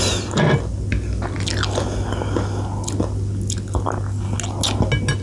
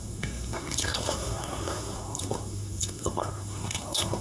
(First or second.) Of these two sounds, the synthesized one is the second